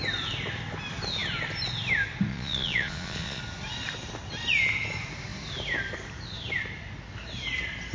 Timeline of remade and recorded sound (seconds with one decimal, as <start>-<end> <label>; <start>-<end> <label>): 0.0-2.3 recorded; 2.3-3.4 remade; 3.4-7.9 recorded